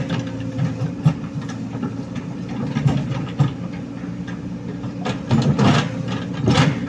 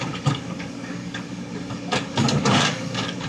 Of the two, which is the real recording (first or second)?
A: first